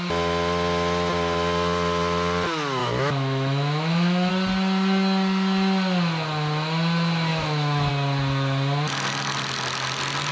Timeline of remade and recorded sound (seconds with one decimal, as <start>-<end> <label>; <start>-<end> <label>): 0.0-2.8 recorded; 2.8-4.3 remade; 4.3-7.3 recorded; 7.3-7.9 remade; 7.9-10.3 recorded

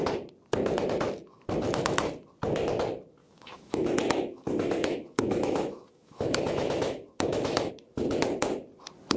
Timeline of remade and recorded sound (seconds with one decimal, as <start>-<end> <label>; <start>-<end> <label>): 0.0-3.2 recorded; 3.2-7.7 remade; 7.7-9.2 recorded

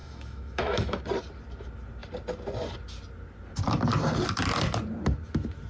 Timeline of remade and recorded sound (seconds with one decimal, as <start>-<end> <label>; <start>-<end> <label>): 0.0-1.0 remade; 1.0-5.7 recorded